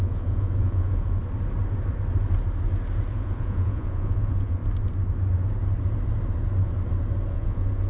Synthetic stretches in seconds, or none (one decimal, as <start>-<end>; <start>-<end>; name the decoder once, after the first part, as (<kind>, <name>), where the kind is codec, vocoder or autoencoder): 0.0-1.2 (vocoder, Vocos); 3.1-4.6; 7.3-7.9